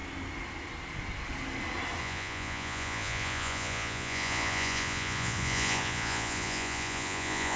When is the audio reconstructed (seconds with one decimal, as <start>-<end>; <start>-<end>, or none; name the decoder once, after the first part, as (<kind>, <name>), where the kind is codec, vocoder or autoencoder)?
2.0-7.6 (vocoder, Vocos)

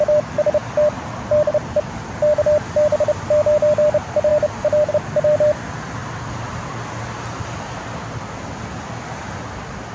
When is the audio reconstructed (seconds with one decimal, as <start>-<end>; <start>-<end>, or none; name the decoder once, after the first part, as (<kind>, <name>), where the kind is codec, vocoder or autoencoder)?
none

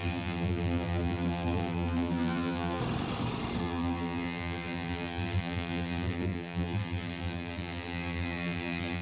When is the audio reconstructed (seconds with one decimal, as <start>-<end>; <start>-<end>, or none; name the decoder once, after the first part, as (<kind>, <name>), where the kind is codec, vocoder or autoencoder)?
0.0-2.8 (vocoder, BigVGAN v2); 3.6-9.0

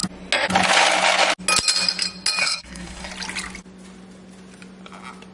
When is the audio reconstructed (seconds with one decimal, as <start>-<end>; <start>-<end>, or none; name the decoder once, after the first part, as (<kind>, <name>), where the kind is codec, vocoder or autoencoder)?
2.4-3.1 (codec, SNAC)

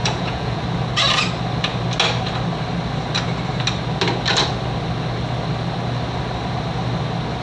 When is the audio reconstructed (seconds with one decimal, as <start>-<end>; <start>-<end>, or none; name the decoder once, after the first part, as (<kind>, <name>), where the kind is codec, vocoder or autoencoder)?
0.0-0.6 (vocoder, Vocos)